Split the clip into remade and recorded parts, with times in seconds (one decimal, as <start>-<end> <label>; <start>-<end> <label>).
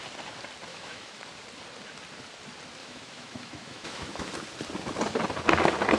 0.0-0.7 recorded; 0.7-1.3 remade; 1.3-2.8 recorded; 2.8-4.3 remade; 4.3-6.0 recorded